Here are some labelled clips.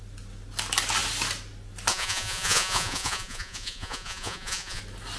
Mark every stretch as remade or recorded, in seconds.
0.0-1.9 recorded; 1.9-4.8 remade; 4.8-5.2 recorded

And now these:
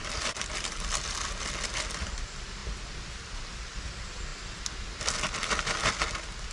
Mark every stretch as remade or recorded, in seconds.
0.0-6.5 recorded

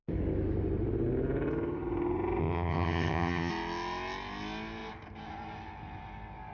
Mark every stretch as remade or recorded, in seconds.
0.0-2.4 recorded; 2.4-3.5 remade; 3.5-6.5 recorded

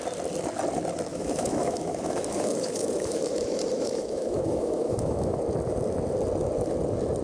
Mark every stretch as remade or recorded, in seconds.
0.0-1.1 recorded; 1.1-5.4 remade; 5.4-7.2 recorded

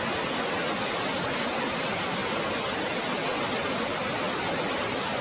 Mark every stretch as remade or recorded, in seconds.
0.0-5.2 recorded

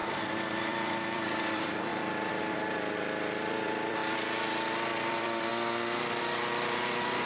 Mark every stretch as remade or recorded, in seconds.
0.0-0.7 recorded; 0.7-4.0 remade; 4.0-5.1 recorded; 5.1-5.5 remade; 5.5-6.2 recorded; 6.2-7.3 remade

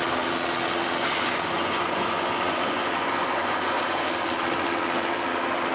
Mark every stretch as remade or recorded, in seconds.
0.0-1.0 recorded; 1.0-4.1 remade; 4.1-5.7 recorded